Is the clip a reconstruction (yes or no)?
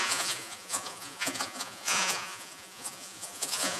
yes